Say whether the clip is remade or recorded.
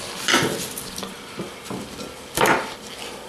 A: recorded